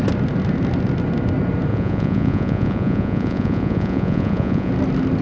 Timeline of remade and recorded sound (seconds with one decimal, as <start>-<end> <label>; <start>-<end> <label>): 0.0-1.7 recorded; 1.7-4.7 remade; 4.7-5.2 recorded

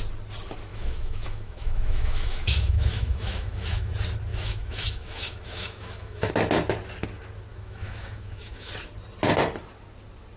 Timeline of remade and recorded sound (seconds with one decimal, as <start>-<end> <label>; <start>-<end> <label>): 0.0-0.7 recorded; 0.7-3.9 remade; 3.9-4.3 recorded; 4.3-6.3 remade; 6.3-7.5 recorded; 7.5-8.7 remade; 8.7-10.4 recorded